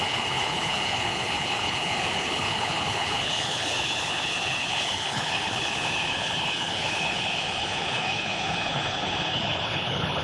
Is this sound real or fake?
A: fake